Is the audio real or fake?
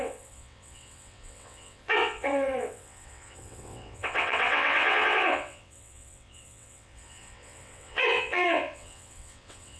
fake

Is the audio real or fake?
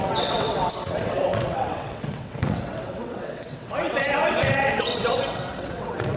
fake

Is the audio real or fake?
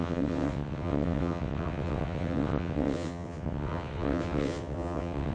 fake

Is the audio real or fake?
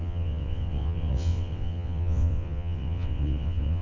fake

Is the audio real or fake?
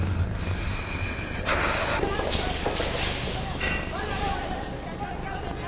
real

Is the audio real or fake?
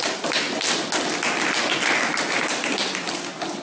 real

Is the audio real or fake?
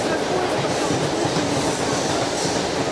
real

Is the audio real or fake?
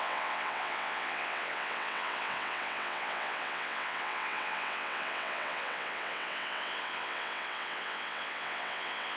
fake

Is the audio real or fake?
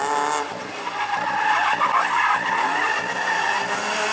real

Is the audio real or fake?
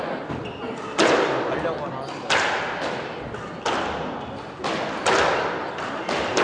real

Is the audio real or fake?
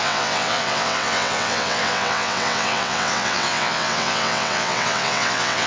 fake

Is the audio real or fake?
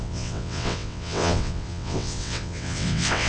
fake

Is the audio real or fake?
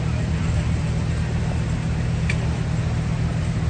real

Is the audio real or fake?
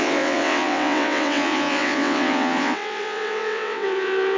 fake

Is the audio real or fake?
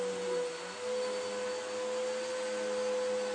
real